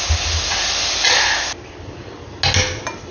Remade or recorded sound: recorded